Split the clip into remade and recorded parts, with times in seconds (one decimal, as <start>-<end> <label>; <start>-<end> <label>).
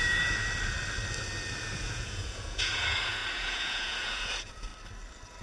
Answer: 0.0-0.4 remade; 0.4-1.6 recorded; 1.6-4.7 remade; 4.7-5.4 recorded